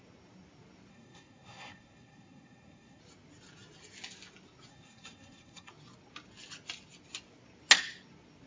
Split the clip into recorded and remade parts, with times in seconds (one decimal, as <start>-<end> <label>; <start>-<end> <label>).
0.0-0.9 recorded; 0.9-3.0 remade; 3.0-4.7 recorded; 4.7-5.7 remade; 5.7-8.5 recorded